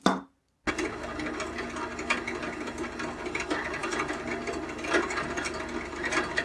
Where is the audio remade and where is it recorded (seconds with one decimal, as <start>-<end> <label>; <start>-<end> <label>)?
0.0-6.4 recorded